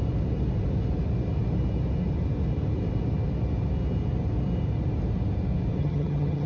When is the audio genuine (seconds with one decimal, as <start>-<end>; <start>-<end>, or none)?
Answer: 0.0-5.8